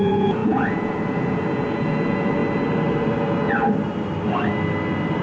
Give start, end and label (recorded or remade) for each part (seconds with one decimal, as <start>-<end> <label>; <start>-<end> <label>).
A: 0.0-2.4 remade; 2.4-5.2 recorded